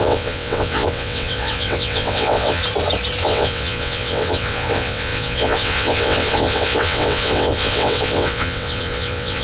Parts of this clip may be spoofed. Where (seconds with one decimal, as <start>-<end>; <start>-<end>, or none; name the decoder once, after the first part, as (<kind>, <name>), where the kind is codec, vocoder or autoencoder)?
0.0-2.6 (vocoder, WaveNeXt); 3.2-9.4